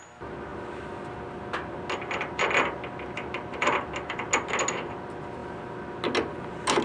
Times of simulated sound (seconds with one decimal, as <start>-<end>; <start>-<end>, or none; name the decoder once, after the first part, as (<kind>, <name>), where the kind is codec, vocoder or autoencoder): none